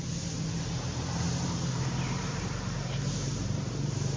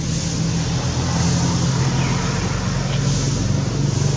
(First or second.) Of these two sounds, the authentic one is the second